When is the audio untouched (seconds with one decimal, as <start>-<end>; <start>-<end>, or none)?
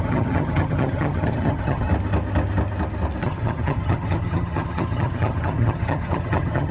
1.9-3.2